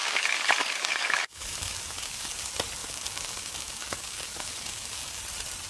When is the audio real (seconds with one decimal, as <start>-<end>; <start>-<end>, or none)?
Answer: 2.4-2.8; 5.2-5.7